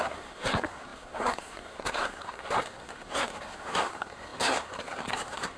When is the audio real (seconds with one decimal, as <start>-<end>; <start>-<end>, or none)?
none